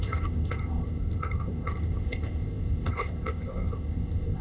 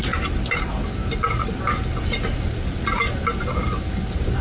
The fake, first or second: first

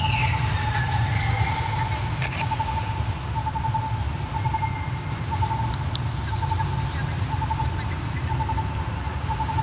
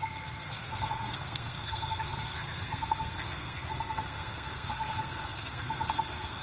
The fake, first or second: second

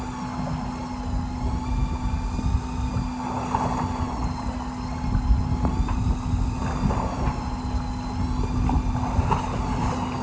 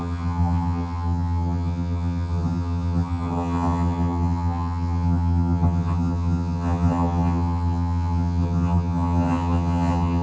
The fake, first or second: second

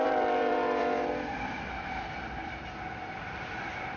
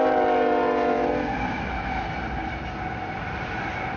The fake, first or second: first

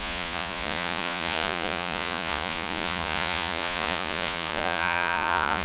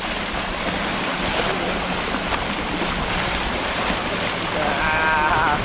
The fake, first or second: first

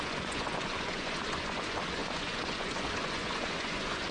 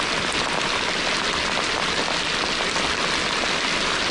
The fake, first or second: first